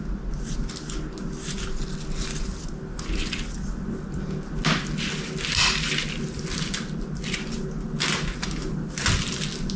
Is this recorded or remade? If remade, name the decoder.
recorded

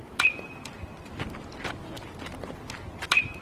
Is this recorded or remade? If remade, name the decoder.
recorded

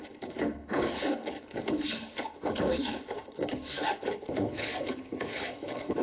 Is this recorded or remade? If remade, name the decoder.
remade, codec, HILCodec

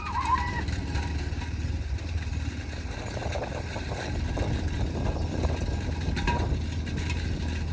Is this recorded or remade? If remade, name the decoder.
recorded